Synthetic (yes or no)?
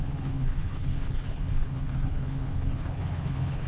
yes